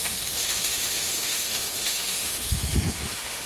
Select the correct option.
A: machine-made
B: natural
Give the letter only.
A